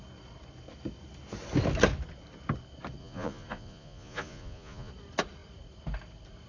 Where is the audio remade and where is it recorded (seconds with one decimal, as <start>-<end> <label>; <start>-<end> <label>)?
0.0-3.0 recorded; 3.0-4.9 remade; 4.9-6.5 recorded